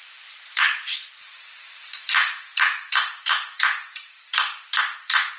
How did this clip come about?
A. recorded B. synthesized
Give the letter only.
B